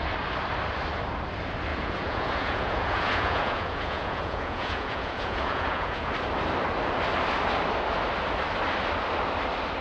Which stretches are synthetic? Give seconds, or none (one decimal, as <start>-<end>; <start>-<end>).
1.7-6.1